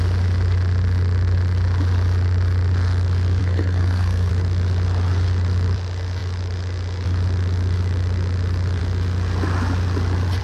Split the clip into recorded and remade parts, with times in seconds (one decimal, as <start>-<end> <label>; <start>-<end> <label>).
0.0-3.4 recorded; 3.4-4.3 remade; 4.3-10.4 recorded